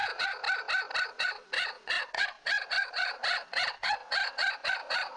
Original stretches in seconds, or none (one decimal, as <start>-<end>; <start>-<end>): 0.4-1.0